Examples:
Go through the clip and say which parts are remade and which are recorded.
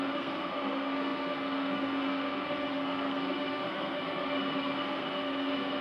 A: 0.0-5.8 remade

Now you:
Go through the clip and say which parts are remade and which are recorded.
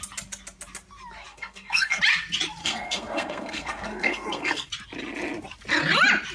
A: 0.0-1.3 recorded; 1.3-2.0 remade; 2.0-2.6 recorded; 2.6-4.7 remade; 4.7-6.3 recorded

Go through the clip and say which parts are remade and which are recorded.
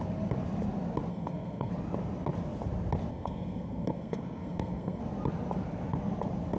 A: 0.0-1.1 recorded; 1.1-1.7 remade; 1.7-3.1 recorded; 3.1-5.0 remade; 5.0-6.6 recorded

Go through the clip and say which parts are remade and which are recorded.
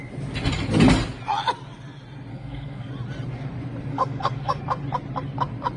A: 0.0-2.3 recorded; 2.3-2.9 remade; 2.9-3.9 recorded; 3.9-4.6 remade; 4.6-5.8 recorded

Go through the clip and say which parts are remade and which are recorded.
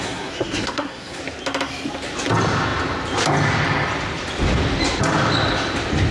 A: 0.0-1.2 remade; 1.2-6.1 recorded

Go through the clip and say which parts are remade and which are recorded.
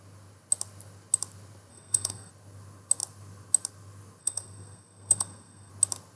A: 0.0-1.7 recorded; 1.7-2.3 remade; 2.3-4.2 recorded; 4.2-5.7 remade; 5.7-6.2 recorded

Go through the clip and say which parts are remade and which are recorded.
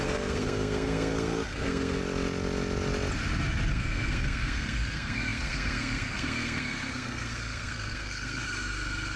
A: 0.0-2.0 remade; 2.0-3.7 recorded; 3.7-9.2 remade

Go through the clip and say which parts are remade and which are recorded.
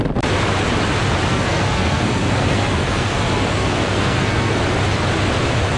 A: 0.0-1.3 recorded; 1.3-4.6 remade; 4.6-5.8 recorded